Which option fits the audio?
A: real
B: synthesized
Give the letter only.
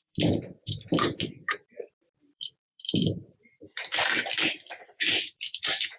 B